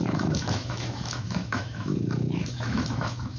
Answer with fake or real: fake